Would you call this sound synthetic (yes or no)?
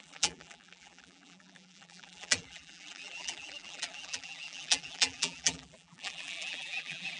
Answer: yes